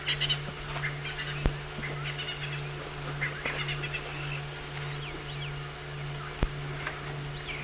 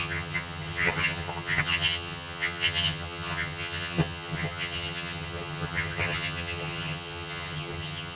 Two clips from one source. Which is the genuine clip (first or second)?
first